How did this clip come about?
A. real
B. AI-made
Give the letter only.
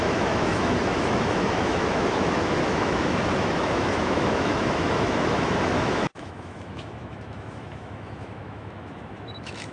B